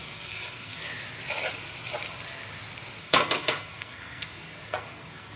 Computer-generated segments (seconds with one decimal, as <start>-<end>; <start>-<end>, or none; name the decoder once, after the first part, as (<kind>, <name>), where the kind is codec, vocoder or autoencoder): 0.0-0.8 (codec, SNAC); 3.0-5.4